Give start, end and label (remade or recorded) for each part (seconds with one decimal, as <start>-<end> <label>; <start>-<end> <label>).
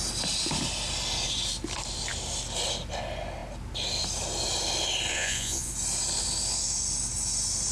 0.0-5.1 recorded; 5.1-5.7 remade; 5.7-7.7 recorded